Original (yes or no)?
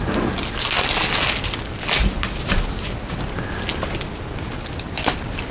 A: yes